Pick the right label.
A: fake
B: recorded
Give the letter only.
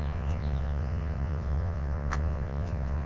A